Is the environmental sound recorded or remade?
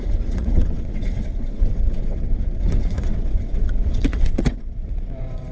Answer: remade